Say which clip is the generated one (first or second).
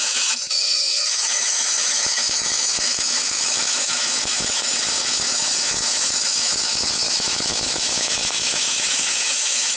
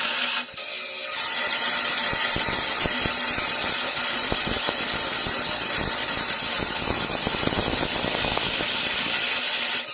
first